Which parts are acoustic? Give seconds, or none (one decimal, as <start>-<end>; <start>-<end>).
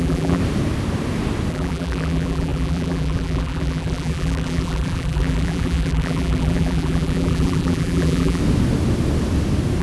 0.4-1.5; 8.4-9.8